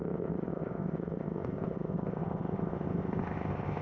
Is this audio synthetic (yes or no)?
yes